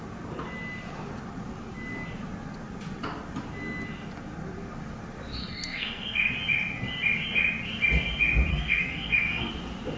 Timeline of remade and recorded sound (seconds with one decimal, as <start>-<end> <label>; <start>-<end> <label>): 0.0-5.4 recorded; 5.4-6.3 remade; 6.3-8.5 recorded; 8.5-9.5 remade; 9.5-10.0 recorded